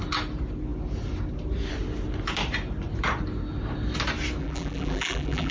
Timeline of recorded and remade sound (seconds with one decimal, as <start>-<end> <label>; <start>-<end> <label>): 0.0-4.4 recorded; 4.4-5.5 remade